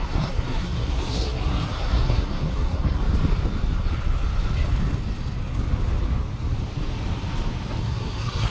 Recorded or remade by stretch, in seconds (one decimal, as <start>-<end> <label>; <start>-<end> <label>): 0.0-3.0 remade; 3.0-7.8 recorded; 7.8-8.5 remade